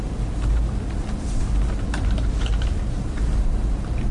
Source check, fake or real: fake